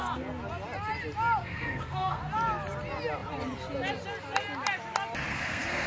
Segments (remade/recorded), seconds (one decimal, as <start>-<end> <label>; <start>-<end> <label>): 0.0-1.4 recorded; 1.4-2.2 remade; 2.2-5.3 recorded; 5.3-5.9 remade